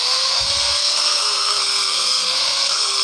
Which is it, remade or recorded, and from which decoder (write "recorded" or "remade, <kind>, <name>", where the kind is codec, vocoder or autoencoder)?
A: remade, codec, SNAC